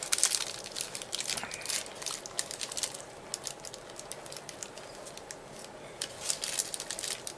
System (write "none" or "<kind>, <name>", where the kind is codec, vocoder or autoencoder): none